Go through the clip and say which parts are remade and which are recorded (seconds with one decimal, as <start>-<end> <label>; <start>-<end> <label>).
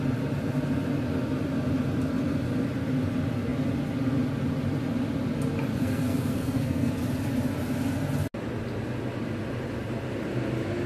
0.0-5.7 recorded; 5.7-6.9 remade; 6.9-10.9 recorded